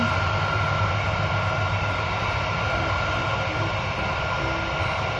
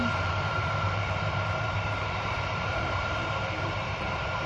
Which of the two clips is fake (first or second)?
second